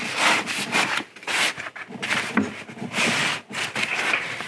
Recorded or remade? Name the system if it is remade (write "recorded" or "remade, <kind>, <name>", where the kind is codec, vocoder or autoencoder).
recorded